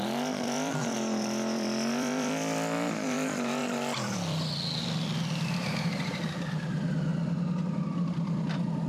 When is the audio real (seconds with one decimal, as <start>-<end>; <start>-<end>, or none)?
7.1-8.9